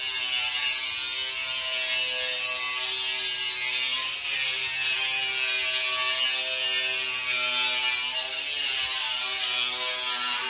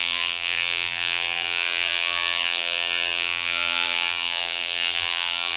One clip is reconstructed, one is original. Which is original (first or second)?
first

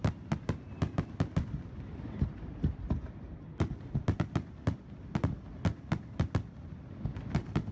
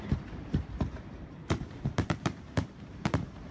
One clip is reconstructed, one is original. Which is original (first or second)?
first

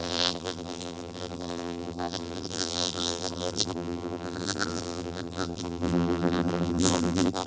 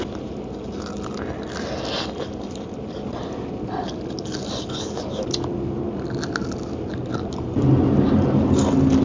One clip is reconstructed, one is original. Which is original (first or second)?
second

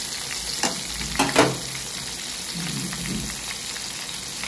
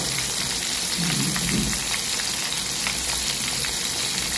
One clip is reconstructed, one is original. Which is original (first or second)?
first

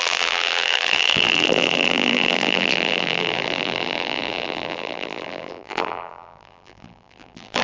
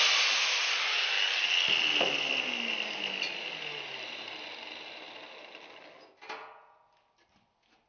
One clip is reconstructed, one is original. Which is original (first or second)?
second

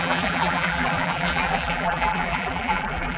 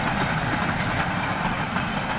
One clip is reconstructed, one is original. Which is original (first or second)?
second